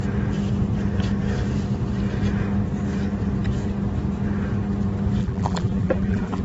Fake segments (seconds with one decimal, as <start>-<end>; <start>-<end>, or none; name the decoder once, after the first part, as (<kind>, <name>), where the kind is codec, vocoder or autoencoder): 5.2-6.4 (vocoder, BigVGAN v2)